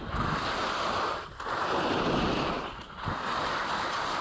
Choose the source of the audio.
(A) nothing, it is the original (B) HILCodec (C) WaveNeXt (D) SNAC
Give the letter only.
A